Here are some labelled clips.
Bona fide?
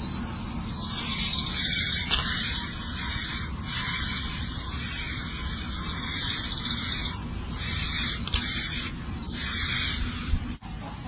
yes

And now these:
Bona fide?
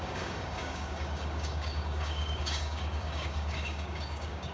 no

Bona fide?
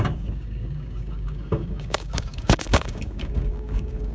no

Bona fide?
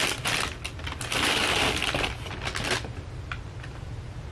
yes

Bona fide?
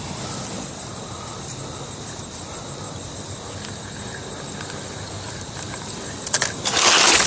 yes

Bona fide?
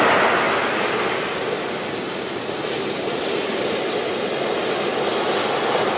yes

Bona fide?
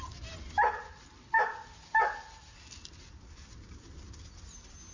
yes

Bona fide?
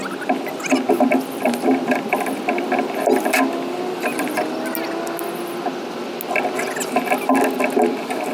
yes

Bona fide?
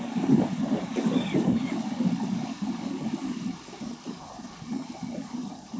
no